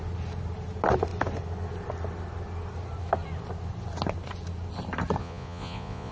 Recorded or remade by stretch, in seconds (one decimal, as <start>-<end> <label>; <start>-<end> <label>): 0.0-5.2 recorded; 5.2-6.1 remade